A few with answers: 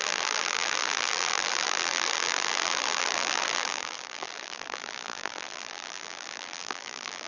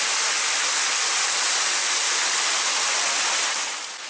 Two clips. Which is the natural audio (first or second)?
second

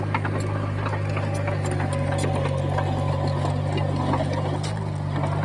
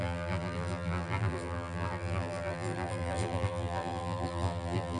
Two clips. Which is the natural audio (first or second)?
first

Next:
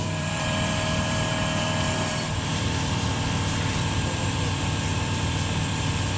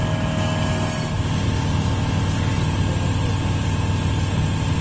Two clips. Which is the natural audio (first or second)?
second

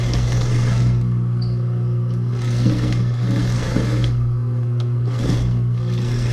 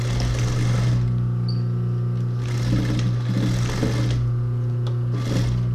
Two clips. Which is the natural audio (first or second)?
second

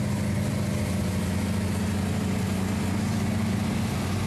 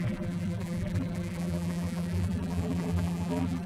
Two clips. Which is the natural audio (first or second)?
first